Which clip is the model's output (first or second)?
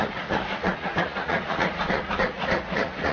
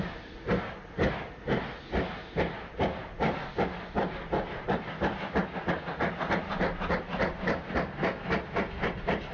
first